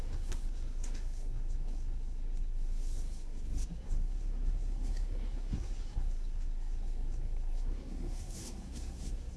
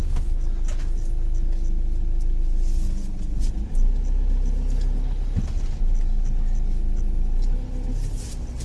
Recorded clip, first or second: second